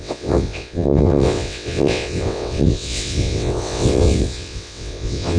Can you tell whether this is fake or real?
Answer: fake